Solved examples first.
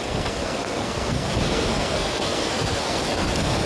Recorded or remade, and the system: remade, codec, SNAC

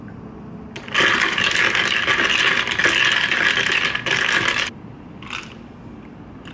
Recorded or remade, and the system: recorded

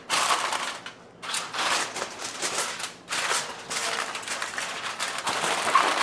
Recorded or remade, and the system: recorded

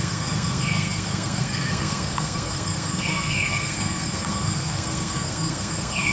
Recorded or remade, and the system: remade, codec, SNAC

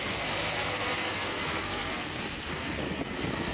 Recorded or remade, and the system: remade, codec, SNAC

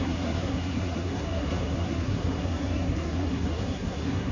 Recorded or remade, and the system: remade, codec, SNAC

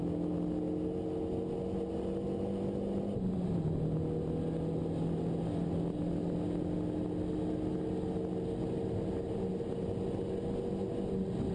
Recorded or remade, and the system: recorded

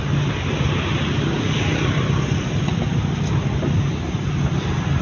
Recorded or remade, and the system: recorded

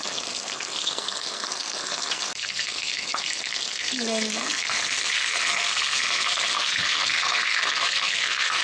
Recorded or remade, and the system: remade, codec, SNAC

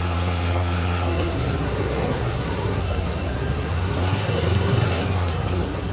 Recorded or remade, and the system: remade, codec, SNAC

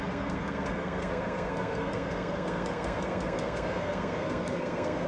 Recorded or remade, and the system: remade, codec, SNAC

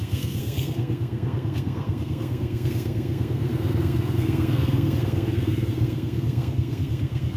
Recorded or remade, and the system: remade, codec, SNAC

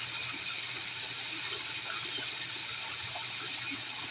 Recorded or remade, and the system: recorded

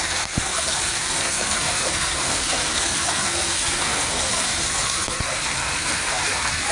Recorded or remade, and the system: remade, codec, SNAC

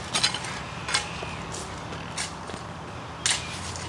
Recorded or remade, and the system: recorded